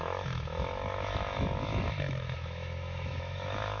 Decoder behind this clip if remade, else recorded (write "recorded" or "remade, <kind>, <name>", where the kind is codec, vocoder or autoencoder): remade, autoencoder, DAC-VAE